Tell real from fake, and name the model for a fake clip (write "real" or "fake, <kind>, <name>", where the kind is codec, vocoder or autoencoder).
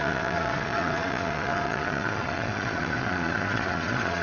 fake, vocoder, Vocos